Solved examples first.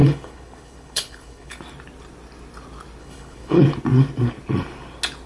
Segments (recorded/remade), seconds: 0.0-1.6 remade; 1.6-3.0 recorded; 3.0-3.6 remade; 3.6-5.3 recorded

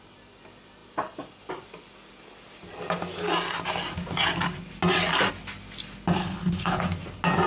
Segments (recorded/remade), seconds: 0.0-6.2 recorded; 6.2-6.8 remade; 6.8-7.5 recorded

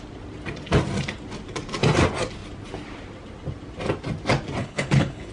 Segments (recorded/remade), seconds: 0.0-4.6 recorded; 4.6-5.3 remade

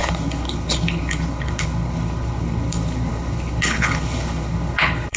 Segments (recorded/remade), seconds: 0.0-5.2 remade